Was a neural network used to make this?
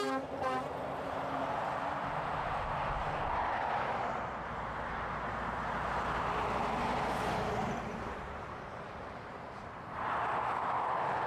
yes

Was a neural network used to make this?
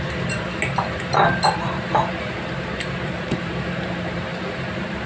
yes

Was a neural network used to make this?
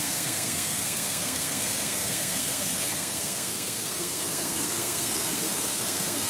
yes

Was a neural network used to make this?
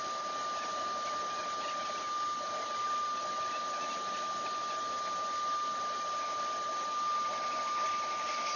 no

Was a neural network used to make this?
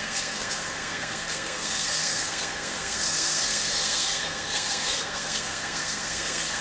yes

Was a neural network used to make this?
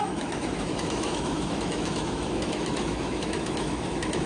yes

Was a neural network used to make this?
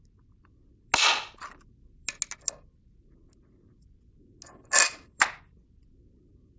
no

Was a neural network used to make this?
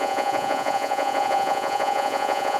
yes